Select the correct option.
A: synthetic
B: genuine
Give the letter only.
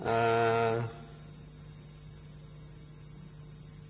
B